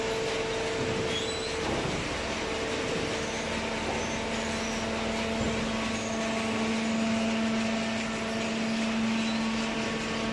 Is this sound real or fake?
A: real